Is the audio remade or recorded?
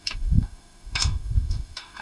remade